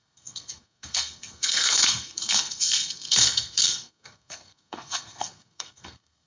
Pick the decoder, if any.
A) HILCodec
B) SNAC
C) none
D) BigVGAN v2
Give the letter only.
B